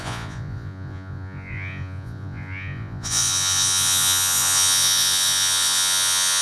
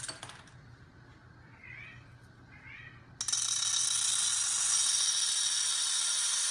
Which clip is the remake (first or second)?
first